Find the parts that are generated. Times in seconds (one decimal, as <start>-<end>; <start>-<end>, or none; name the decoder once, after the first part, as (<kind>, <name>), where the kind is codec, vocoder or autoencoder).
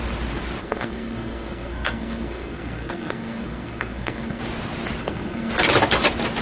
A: 0.6-4.4 (codec, SNAC); 5.0-5.5